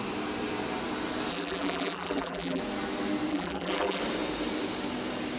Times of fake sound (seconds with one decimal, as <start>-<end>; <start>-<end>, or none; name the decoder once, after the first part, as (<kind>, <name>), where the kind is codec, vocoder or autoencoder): 1.3-2.6 (vocoder, BigVGAN v2); 3.3-4.0